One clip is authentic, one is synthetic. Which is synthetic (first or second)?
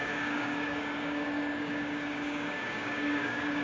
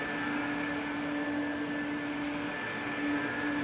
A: first